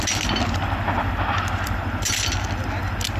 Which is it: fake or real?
real